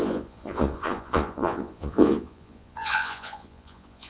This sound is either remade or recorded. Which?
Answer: remade